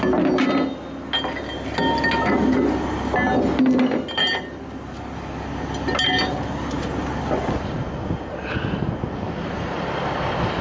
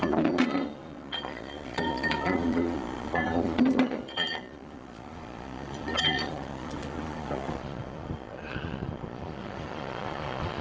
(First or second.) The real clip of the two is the first